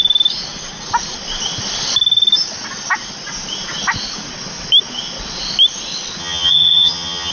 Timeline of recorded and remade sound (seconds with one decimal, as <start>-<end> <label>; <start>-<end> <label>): 0.0-6.2 recorded; 6.2-7.3 remade